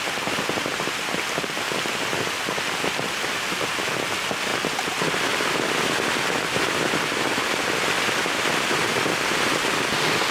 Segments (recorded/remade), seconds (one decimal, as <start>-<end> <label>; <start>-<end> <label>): 0.0-10.3 recorded